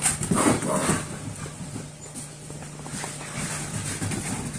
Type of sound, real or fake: real